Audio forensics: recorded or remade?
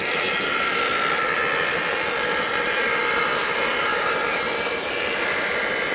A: recorded